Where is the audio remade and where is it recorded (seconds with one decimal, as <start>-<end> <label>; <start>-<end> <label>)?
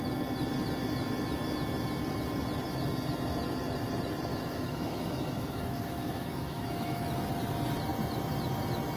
0.0-4.3 recorded; 4.3-7.0 remade; 7.0-9.0 recorded